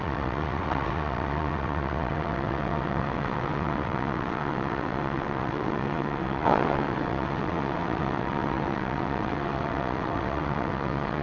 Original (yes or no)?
no